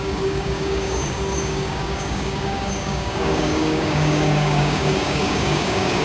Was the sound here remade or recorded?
remade